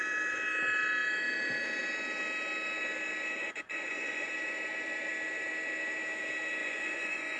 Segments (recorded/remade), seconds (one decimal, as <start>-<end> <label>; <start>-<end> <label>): 0.0-3.4 recorded; 3.4-4.3 remade; 4.3-6.6 recorded; 6.6-7.4 remade